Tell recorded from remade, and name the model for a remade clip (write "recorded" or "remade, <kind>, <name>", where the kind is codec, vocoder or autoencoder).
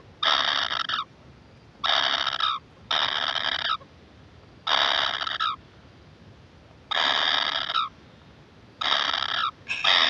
recorded